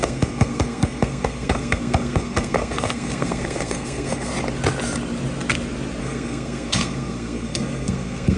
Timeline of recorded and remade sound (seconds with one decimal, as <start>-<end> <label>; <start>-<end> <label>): 0.0-4.3 remade; 4.3-6.0 recorded; 6.0-8.4 remade